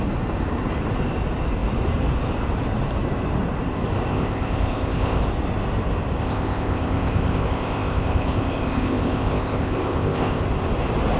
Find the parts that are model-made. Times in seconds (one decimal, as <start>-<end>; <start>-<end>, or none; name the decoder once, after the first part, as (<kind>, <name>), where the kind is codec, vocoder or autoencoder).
4.1-5.2 (codec, ZipCodec); 6.2-10.4

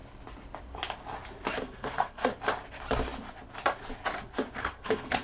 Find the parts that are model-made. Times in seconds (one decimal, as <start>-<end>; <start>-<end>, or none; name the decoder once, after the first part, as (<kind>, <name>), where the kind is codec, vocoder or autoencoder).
1.6-2.3 (codec, SNAC); 4.6-5.2

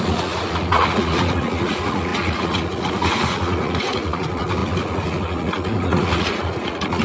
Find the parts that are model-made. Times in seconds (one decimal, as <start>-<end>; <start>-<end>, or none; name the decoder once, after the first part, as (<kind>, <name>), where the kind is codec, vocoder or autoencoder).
0.0-7.0 (vocoder, Vocos)

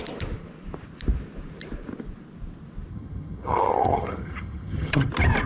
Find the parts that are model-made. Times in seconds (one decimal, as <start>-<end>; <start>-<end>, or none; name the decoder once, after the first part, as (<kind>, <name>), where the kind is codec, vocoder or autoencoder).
2.9-5.1 (vocoder, HiFi-GAN)

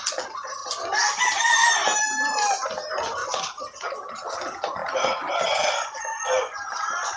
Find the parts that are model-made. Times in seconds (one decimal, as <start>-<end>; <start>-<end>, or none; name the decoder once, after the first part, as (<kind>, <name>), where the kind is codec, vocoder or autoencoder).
3.2-4.3 (vocoder, BigVGAN v2)

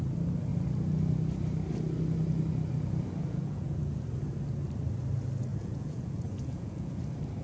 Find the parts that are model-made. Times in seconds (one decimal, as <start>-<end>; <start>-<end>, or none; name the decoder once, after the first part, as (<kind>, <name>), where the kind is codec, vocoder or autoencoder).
3.2-4.0 (vocoder, Vocos); 5.5-7.0